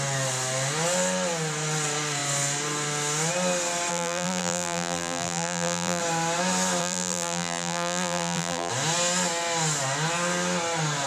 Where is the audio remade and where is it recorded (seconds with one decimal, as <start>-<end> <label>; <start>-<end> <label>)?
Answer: 0.0-3.9 recorded; 3.9-6.0 remade; 6.0-6.8 recorded; 6.8-8.7 remade; 8.7-11.1 recorded